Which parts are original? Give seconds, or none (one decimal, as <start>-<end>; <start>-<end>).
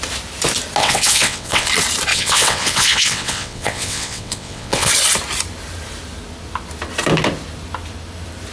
0.0-0.8; 1.7-2.1; 4.9-8.5